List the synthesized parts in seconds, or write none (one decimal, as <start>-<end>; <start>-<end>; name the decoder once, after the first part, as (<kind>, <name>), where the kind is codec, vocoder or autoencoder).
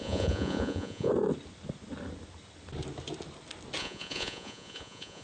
0.0-1.1 (vocoder, Vocos); 3.8-5.2